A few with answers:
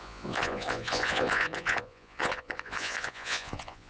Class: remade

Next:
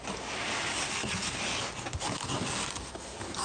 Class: recorded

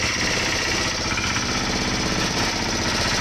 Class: recorded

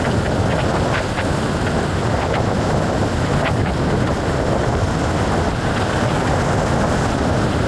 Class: recorded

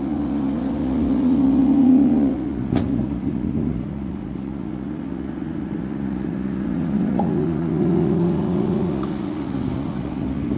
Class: remade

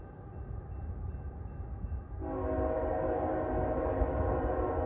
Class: recorded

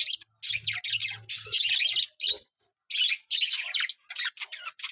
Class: recorded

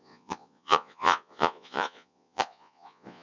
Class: remade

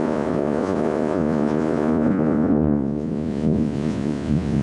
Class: remade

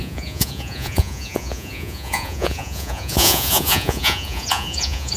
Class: remade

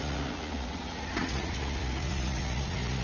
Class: remade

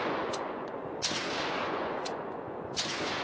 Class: remade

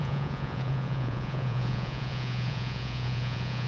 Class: remade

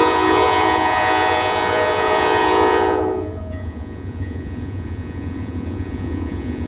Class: remade